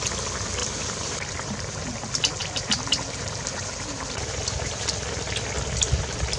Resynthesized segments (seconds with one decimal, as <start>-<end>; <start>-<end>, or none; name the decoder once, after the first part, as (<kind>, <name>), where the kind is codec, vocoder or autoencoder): 0.6-1.6 (vocoder, BigVGAN v2); 2.4-4.9